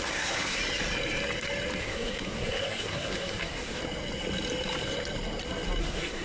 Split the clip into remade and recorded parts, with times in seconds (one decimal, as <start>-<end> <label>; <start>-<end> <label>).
0.0-0.6 remade; 0.6-1.8 recorded; 1.8-3.8 remade; 3.8-5.8 recorded; 5.8-6.2 remade